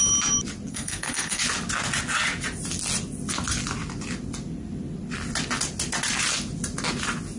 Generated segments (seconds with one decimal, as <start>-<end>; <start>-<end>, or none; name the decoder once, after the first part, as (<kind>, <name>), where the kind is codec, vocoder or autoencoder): 0.7-1.4 (codec, SNAC)